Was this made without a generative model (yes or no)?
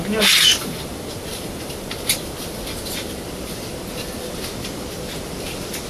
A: yes